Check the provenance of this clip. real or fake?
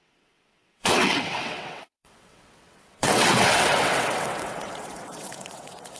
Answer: fake